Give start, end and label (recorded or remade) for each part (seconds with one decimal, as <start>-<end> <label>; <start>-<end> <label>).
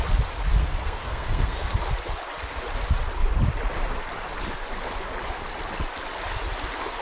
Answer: 0.0-0.6 recorded; 0.6-1.8 remade; 1.8-7.0 recorded